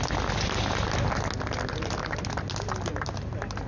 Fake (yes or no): no